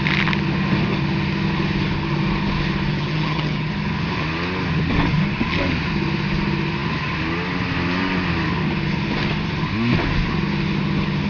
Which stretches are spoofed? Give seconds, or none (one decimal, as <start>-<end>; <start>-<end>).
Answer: 2.9-3.7